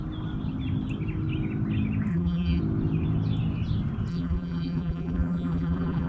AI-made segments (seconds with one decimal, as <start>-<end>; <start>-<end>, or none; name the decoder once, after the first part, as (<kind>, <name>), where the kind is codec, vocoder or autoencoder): 2.1-2.6 (vocoder, BigVGAN v2); 4.1-6.1